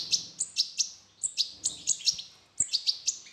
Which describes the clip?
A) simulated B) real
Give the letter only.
B